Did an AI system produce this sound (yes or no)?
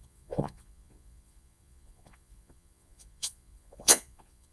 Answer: yes